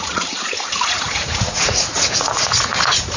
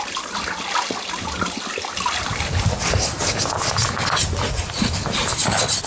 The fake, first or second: first